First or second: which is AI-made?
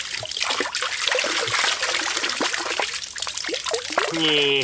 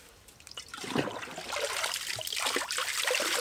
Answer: second